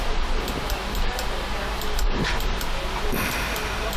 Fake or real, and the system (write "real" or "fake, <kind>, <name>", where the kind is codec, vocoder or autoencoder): real